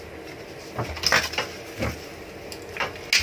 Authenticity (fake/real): real